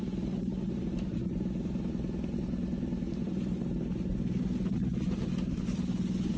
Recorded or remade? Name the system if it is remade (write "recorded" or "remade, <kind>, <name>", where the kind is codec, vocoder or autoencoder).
recorded